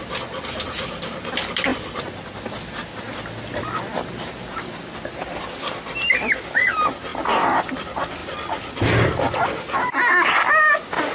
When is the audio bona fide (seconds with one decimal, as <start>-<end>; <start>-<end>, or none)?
0.0-11.1